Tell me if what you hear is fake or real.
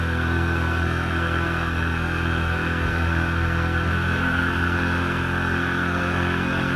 fake